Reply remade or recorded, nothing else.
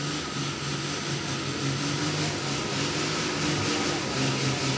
recorded